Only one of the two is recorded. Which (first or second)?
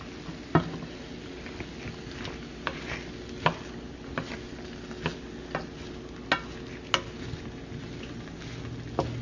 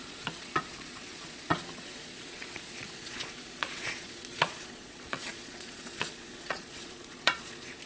first